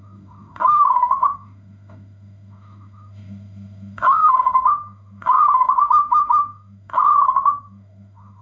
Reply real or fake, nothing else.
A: fake